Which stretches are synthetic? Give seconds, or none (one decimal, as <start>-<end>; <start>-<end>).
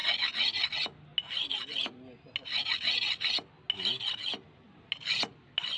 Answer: none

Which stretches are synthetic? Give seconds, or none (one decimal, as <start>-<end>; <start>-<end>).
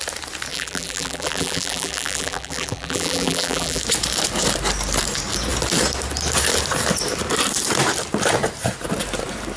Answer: 0.5-3.8